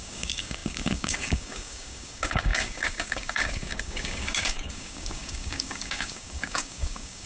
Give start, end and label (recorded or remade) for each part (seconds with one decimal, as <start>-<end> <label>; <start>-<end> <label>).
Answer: 0.0-7.3 remade